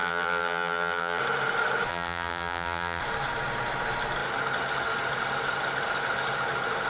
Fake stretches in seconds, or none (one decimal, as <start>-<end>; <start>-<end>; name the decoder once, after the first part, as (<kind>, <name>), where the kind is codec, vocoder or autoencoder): 0.0-1.2 (vocoder, BigVGAN v2); 1.9-3.0